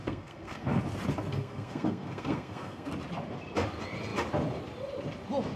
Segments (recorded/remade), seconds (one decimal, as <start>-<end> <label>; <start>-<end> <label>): 0.0-0.8 remade; 0.8-1.3 recorded; 1.3-2.9 remade; 2.9-5.6 recorded